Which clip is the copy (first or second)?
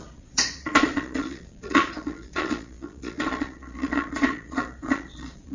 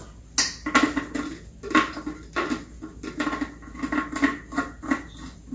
first